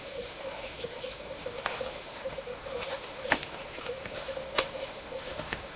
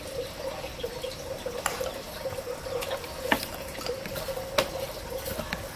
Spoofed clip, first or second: first